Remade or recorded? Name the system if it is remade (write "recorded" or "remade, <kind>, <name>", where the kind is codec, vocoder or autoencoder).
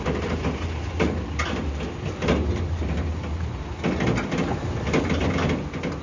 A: recorded